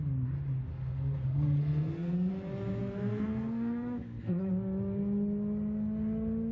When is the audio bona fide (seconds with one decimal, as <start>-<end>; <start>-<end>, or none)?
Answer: 0.0-0.7; 2.3-2.8; 4.5-6.5